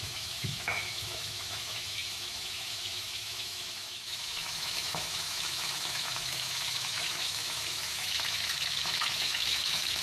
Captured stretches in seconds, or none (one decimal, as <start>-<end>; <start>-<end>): none